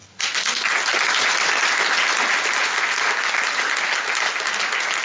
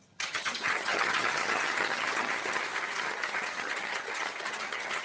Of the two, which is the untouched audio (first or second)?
first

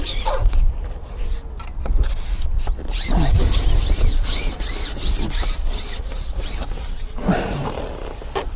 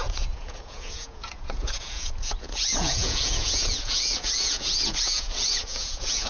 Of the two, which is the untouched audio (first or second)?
first